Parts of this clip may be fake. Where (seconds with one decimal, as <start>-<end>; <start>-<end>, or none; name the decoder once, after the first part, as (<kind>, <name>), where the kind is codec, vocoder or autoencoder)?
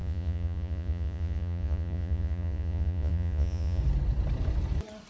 0.0-3.8 (vocoder, Vocos)